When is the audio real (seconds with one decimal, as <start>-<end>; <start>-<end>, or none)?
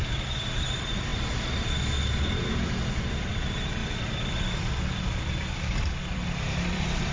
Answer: none